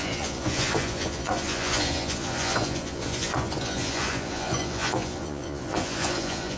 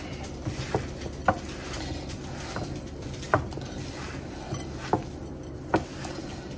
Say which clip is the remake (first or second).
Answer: first